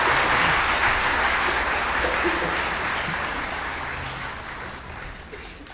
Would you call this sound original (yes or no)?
yes